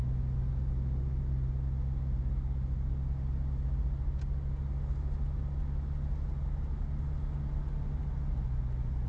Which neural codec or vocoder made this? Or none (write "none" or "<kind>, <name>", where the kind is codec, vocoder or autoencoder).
none